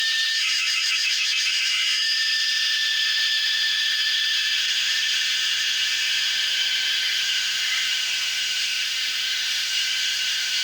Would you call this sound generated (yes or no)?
yes